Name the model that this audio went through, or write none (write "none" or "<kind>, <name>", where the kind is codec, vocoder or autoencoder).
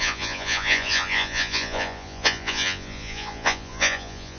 vocoder, Vocos